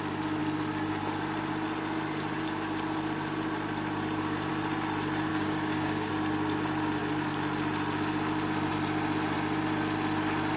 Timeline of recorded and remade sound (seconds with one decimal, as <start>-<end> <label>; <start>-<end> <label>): 0.0-5.3 recorded; 5.3-6.1 remade; 6.1-10.6 recorded